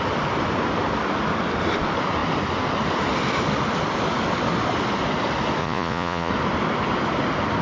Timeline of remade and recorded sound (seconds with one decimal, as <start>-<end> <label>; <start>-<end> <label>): 0.0-5.6 recorded; 5.6-6.3 remade; 6.3-7.6 recorded